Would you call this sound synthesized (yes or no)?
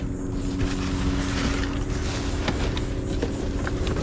no